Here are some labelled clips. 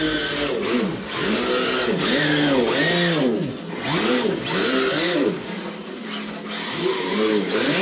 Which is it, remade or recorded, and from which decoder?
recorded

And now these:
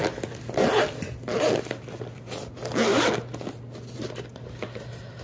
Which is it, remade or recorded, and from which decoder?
recorded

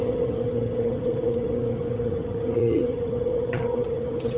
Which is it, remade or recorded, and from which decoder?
remade, vocoder, HiFi-GAN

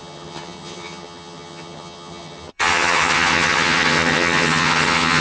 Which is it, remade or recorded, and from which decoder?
remade, vocoder, HiFi-GAN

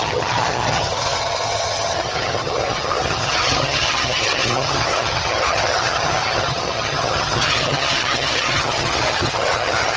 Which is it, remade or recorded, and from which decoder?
remade, vocoder, HiFi-GAN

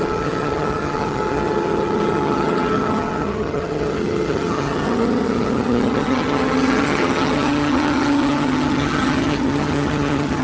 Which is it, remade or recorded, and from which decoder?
remade, vocoder, HiFi-GAN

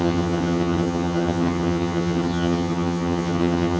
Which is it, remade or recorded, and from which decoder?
remade, vocoder, HiFi-GAN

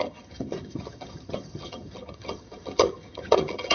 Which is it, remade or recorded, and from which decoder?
remade, vocoder, HiFi-GAN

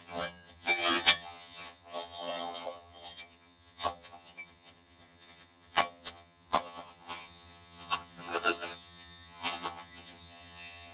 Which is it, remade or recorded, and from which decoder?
remade, vocoder, HiFi-GAN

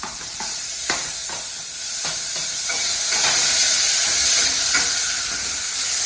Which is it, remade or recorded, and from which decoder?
recorded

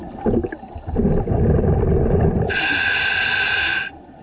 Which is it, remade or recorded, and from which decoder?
recorded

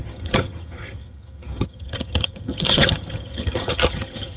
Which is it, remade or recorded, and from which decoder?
remade, vocoder, HiFi-GAN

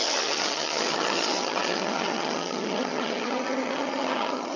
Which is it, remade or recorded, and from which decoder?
remade, vocoder, HiFi-GAN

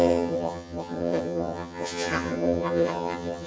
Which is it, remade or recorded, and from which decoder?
remade, vocoder, HiFi-GAN